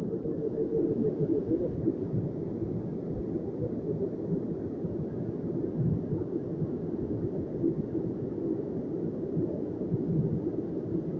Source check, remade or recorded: recorded